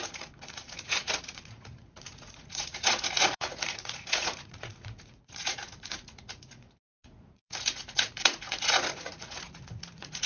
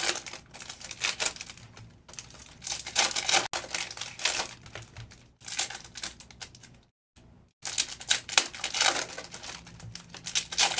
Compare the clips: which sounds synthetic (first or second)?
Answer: first